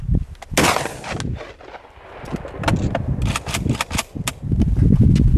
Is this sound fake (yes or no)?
no